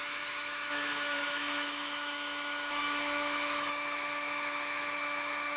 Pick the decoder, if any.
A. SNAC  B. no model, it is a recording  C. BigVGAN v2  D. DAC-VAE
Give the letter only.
D